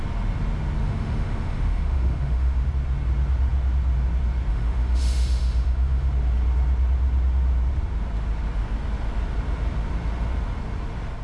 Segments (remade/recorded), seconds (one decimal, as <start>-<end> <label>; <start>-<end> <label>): 0.0-0.8 recorded; 0.8-2.7 remade; 2.7-4.5 recorded; 4.5-6.1 remade; 6.1-11.2 recorded